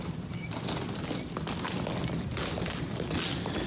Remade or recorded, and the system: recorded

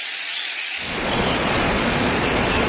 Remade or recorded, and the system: remade, vocoder, Vocos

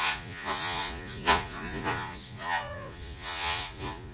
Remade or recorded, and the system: remade, vocoder, Vocos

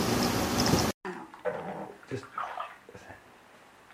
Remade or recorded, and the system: recorded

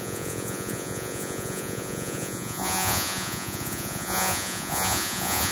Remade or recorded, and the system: remade, vocoder, Vocos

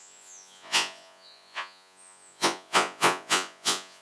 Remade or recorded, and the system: remade, vocoder, Vocos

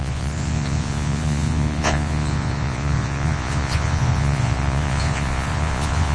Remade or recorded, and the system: remade, vocoder, Vocos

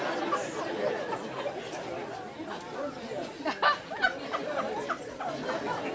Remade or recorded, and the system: recorded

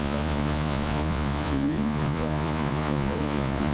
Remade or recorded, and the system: remade, vocoder, Vocos